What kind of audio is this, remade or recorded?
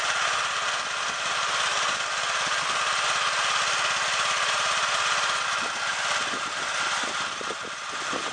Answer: recorded